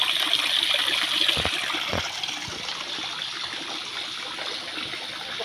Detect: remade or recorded recorded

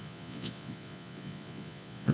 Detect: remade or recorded remade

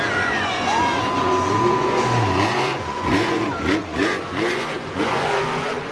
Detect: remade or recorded remade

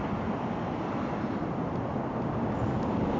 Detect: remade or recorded recorded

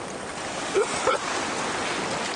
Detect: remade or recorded recorded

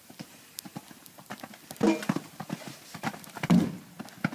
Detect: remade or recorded recorded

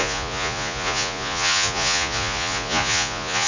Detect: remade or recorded remade